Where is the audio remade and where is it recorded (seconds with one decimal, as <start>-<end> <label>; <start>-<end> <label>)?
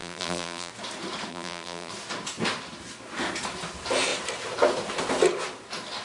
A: 0.0-0.7 remade; 0.7-1.3 recorded; 1.3-1.9 remade; 1.9-6.0 recorded